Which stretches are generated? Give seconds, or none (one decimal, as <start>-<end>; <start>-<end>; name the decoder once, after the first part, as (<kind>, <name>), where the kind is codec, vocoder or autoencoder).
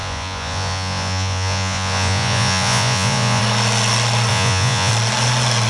0.0-3.4 (vocoder, Vocos); 4.3-4.9